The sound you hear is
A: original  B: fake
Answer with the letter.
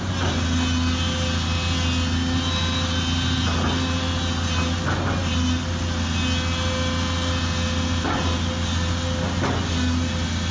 A